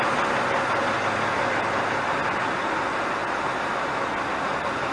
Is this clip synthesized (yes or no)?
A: no